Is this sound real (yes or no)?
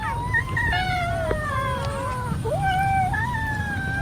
yes